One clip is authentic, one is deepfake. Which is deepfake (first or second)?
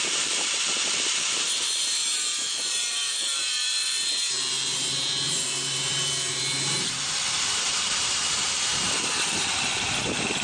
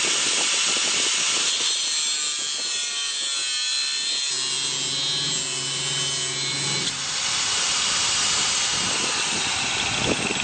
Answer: first